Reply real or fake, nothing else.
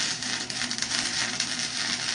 real